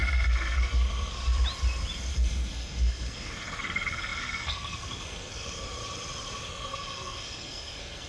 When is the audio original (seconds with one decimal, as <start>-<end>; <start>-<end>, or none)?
1.1-2.1; 5.8-6.5